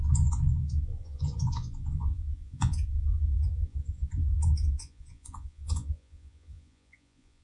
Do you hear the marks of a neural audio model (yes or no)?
yes